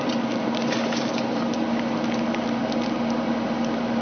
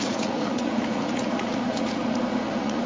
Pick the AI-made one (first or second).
second